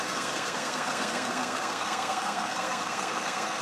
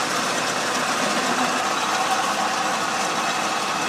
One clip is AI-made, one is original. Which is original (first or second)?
second